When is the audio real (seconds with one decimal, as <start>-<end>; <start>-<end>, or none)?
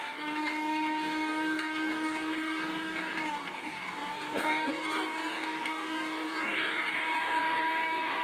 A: none